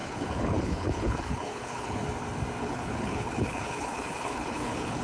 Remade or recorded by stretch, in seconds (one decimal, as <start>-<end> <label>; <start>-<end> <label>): 0.0-2.0 remade; 2.0-2.6 recorded; 2.6-5.0 remade